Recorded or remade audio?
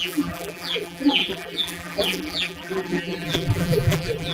remade